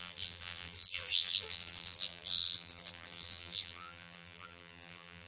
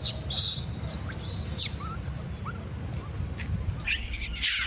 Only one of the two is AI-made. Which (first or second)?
first